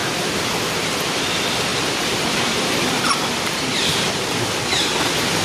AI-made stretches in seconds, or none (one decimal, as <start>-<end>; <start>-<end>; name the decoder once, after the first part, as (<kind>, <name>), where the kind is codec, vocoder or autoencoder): 1.7-3.9 (vocoder, BigVGAN v2)